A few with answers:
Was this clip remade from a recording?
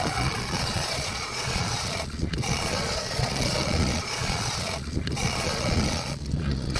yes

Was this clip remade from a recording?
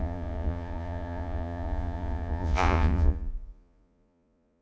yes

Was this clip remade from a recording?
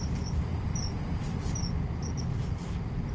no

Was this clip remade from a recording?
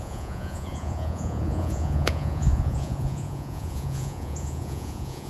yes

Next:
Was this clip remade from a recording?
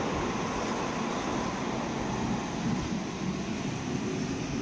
no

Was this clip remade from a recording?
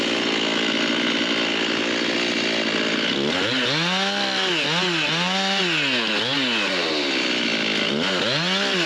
no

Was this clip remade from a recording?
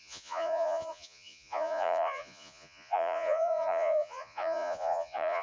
yes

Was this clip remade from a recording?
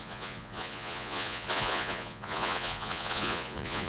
yes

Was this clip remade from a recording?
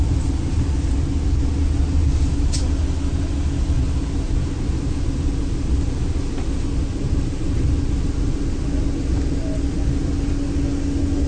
no